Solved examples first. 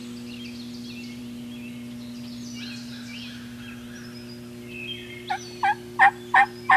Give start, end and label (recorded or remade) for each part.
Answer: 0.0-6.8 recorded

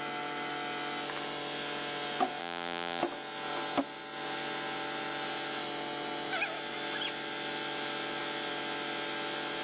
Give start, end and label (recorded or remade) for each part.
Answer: 0.0-2.4 recorded; 2.4-3.0 remade; 3.0-9.6 recorded

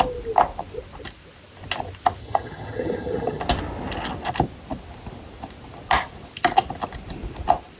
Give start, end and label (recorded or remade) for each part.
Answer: 0.0-2.2 recorded; 2.2-3.4 remade; 3.4-7.8 recorded

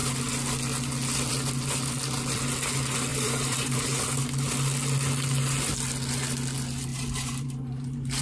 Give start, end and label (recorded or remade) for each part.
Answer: 0.0-3.1 recorded; 3.1-4.0 remade; 4.0-6.9 recorded; 6.9-8.2 remade

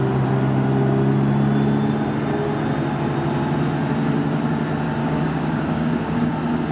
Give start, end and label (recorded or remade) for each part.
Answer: 0.0-5.0 recorded; 5.0-6.3 remade; 6.3-6.7 recorded

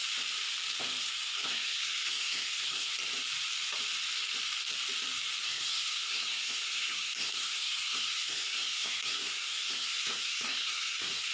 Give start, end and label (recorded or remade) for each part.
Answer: 0.0-1.1 recorded; 1.1-2.9 remade; 2.9-5.4 recorded; 5.4-11.3 remade

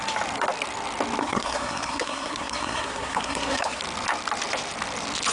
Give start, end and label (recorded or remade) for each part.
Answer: 0.0-1.2 recorded; 1.2-3.8 remade; 3.8-5.3 recorded